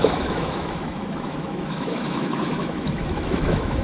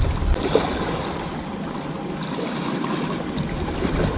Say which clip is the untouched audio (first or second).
second